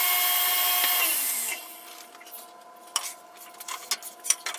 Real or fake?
real